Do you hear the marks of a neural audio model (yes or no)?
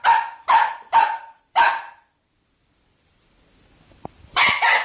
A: yes